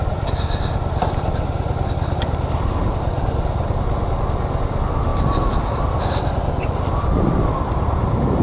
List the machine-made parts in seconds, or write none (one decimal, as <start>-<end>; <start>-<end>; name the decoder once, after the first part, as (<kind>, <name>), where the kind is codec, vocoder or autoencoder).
none